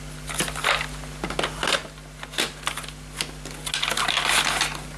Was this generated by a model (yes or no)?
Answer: no